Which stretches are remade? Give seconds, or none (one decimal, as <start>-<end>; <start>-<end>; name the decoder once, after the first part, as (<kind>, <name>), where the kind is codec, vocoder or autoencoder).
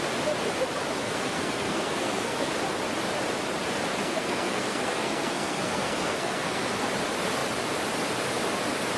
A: 1.0-2.5 (codec, SNAC); 3.9-6.8